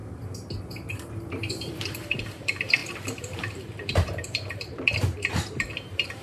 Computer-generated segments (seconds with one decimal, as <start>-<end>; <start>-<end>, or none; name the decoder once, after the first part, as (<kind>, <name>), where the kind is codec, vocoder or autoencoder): 0.6-6.2 (vocoder, BigVGAN v2)